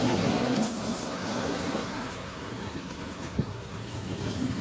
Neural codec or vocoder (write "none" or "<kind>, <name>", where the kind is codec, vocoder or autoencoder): codec, SNAC